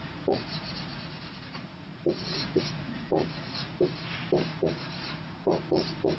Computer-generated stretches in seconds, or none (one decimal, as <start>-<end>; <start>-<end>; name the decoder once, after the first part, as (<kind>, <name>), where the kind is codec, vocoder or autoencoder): 0.0-3.7 (vocoder, Vocos); 4.5-6.2